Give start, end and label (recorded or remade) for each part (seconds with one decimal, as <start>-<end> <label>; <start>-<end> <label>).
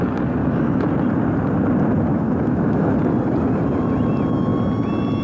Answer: 0.0-0.4 recorded; 0.4-0.9 remade; 0.9-2.1 recorded; 2.1-3.0 remade; 3.0-5.2 recorded